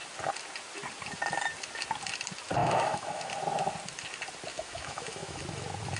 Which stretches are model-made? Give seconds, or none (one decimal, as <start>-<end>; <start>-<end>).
2.6-3.3; 4.5-5.4

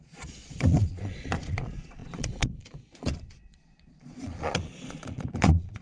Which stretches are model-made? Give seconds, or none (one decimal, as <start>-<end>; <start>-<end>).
0.0-5.8

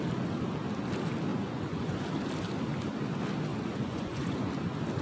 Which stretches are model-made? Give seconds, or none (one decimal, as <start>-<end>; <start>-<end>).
1.3-2.1; 3.5-4.5

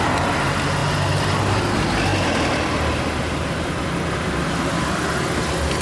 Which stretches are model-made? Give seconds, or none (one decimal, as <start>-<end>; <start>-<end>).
none

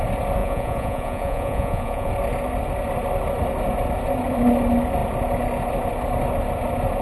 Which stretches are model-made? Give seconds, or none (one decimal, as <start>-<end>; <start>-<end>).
0.4-2.1

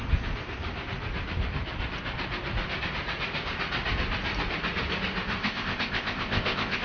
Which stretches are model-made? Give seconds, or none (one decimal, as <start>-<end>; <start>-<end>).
5.4-6.8

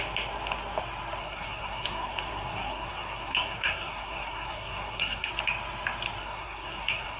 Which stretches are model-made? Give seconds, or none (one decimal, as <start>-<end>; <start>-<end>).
1.2-5.3; 6.2-7.2